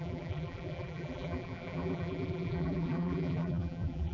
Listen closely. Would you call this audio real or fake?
fake